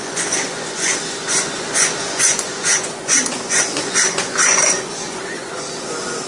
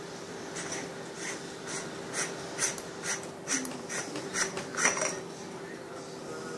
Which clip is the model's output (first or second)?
first